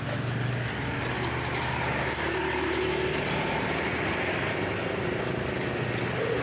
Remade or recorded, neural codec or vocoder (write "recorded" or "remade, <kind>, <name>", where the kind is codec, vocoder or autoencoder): recorded